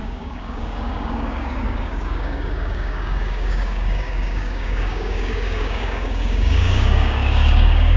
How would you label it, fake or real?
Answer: fake